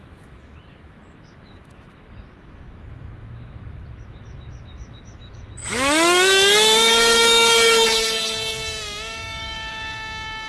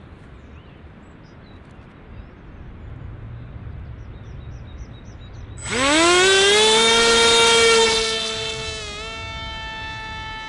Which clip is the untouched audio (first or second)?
second